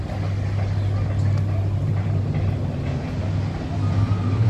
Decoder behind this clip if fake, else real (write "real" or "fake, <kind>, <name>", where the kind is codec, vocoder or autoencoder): real